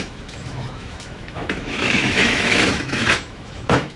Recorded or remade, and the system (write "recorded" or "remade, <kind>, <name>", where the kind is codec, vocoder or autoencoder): remade, autoencoder, DAC-VAE